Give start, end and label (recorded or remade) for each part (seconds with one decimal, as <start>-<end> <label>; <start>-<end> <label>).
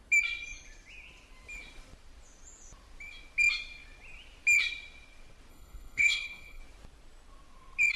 0.0-5.5 recorded; 5.5-6.6 remade; 6.6-8.0 recorded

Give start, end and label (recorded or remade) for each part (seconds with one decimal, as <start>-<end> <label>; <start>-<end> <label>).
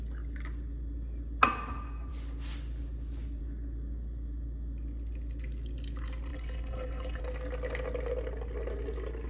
0.0-6.3 recorded; 6.3-7.2 remade; 7.2-9.3 recorded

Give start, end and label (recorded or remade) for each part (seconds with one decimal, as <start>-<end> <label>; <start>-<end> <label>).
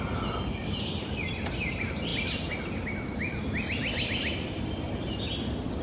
0.0-5.8 recorded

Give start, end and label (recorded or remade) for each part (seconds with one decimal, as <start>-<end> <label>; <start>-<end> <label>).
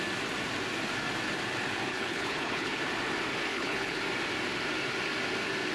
0.0-1.9 recorded; 1.9-2.8 remade; 2.8-3.5 recorded; 3.5-4.0 remade; 4.0-5.7 recorded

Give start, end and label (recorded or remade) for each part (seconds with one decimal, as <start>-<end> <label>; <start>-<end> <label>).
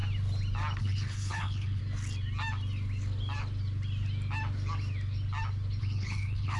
0.0-0.8 recorded; 0.8-1.8 remade; 1.8-5.8 recorded; 5.8-6.6 remade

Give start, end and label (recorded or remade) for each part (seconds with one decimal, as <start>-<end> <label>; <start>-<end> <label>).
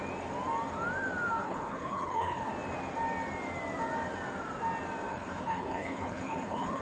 0.0-1.4 recorded; 1.4-2.5 remade; 2.5-5.1 recorded; 5.1-6.8 remade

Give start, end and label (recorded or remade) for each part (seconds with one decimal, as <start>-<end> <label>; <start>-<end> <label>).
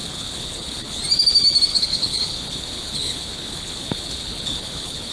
0.0-1.0 remade; 1.0-1.7 recorded; 1.7-5.1 remade